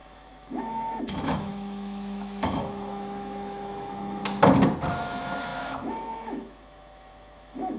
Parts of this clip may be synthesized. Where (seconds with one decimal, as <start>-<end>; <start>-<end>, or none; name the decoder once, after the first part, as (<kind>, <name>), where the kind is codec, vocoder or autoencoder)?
0.0-4.2 (autoencoder, DAC-VAE); 4.9-7.8